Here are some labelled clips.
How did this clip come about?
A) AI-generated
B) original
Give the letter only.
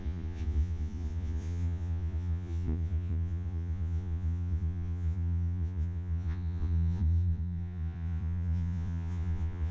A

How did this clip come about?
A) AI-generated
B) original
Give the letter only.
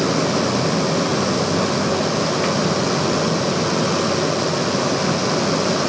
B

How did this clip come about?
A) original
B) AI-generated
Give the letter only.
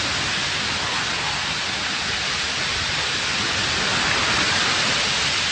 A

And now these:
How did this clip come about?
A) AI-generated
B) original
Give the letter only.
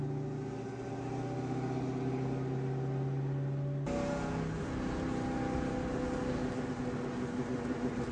B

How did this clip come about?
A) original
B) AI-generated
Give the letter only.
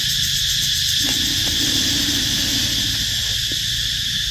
A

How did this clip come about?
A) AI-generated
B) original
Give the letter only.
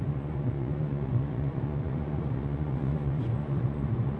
A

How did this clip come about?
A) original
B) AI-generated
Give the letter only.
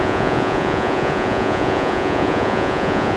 B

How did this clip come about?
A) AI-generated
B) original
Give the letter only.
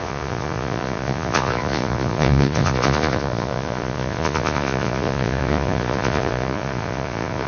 A